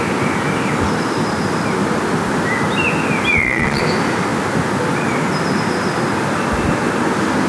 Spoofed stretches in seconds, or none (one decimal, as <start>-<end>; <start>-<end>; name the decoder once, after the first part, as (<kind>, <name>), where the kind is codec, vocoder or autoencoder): 3.3-3.8 (vocoder, Vocos)